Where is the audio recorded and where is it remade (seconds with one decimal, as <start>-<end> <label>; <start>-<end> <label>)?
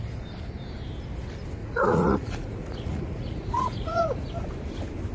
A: 0.0-1.6 recorded; 1.6-4.3 remade; 4.3-5.1 recorded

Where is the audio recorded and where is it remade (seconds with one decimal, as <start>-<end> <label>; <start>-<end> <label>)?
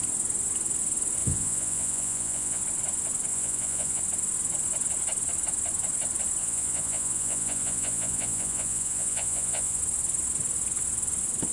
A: 0.0-1.2 recorded; 1.2-2.6 remade; 2.6-3.3 recorded; 3.3-4.0 remade; 4.0-6.4 recorded; 6.4-9.8 remade; 9.8-11.5 recorded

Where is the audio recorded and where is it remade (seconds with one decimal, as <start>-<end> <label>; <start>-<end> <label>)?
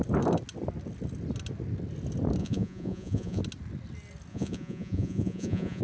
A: 0.0-2.4 recorded; 2.4-3.4 remade; 3.4-4.3 recorded; 4.3-5.8 remade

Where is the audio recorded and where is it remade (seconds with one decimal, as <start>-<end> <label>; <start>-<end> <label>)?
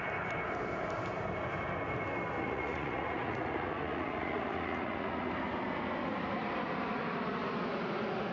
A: 0.0-2.4 recorded; 2.4-5.3 remade; 5.3-8.3 recorded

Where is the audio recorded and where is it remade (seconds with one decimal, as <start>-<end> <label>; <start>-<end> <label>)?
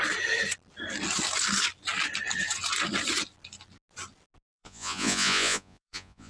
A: 0.0-4.5 recorded; 4.5-6.3 remade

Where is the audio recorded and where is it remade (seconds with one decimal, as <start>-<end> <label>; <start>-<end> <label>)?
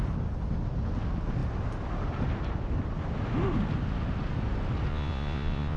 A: 0.0-4.9 recorded; 4.9-5.8 remade